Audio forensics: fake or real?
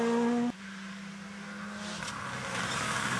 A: real